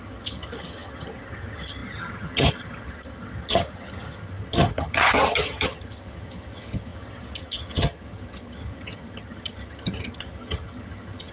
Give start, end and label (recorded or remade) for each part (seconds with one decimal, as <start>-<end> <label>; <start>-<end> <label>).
0.0-11.3 remade